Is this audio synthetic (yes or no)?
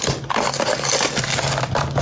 no